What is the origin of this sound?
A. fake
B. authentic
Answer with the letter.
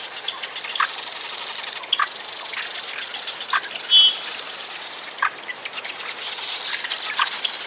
B